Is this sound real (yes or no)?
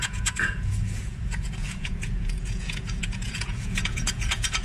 no